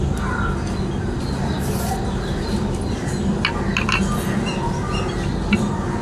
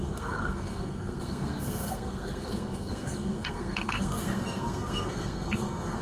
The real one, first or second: first